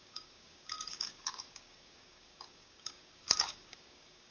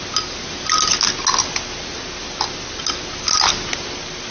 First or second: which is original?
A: second